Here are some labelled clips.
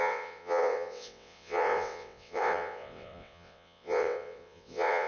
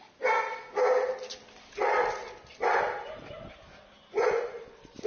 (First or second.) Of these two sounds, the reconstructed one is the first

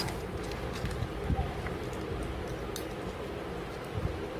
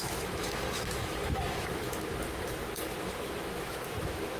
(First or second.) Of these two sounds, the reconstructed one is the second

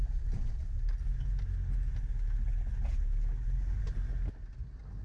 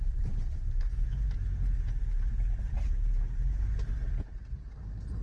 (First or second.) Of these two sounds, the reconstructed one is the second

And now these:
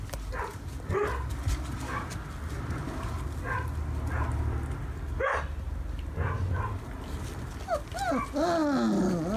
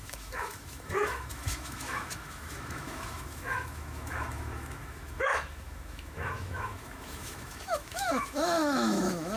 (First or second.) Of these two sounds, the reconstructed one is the second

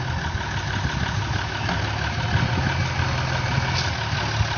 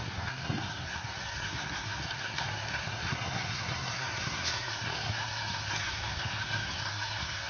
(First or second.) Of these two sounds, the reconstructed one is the second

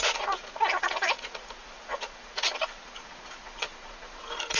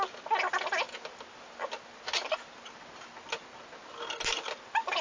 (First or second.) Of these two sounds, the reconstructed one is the first